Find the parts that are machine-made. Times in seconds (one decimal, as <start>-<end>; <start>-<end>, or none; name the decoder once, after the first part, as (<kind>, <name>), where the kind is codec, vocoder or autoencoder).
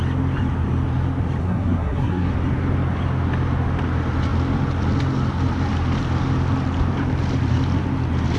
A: 1.4-2.3 (codec, SNAC)